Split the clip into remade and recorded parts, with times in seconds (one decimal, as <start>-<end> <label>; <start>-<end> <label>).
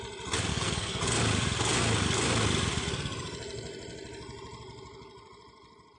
0.0-0.5 recorded; 0.5-1.0 remade; 1.0-6.0 recorded